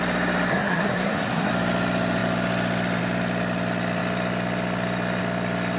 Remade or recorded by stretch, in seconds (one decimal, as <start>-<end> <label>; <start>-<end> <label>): 0.0-0.5 recorded; 0.5-1.5 remade; 1.5-5.8 recorded